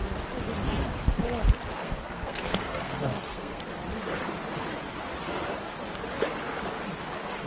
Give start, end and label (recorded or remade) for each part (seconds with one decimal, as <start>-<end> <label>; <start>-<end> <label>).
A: 0.0-1.8 recorded; 1.8-3.6 remade; 3.6-7.5 recorded

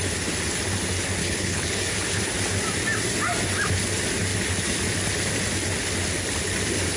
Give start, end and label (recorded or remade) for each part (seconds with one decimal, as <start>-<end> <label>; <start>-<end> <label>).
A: 0.0-1.2 recorded; 1.2-2.2 remade; 2.2-7.0 recorded